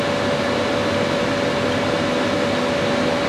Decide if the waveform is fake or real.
real